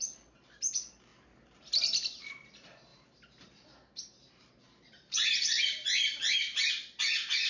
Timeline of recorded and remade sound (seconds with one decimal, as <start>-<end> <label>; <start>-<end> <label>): 0.0-2.9 recorded; 2.9-6.7 remade; 6.7-7.5 recorded